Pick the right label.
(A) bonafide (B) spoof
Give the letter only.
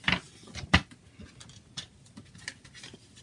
A